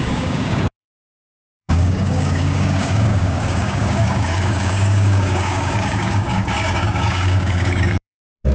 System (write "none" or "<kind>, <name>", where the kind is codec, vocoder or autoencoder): codec, DAC